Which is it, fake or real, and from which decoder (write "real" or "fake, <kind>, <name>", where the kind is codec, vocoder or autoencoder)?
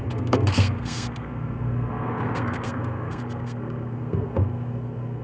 fake, codec, SNAC